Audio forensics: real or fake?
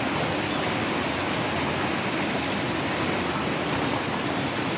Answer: real